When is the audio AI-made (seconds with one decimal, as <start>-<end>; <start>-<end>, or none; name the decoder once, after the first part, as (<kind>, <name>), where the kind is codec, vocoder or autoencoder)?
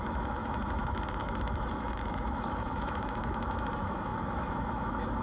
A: 0.0-5.2 (autoencoder, DAC-VAE)